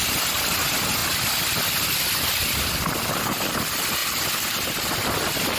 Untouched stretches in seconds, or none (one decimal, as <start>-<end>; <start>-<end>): 0.0-5.6